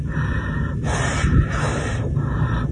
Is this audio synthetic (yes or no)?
yes